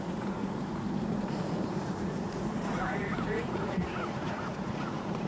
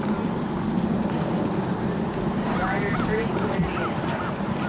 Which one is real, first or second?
second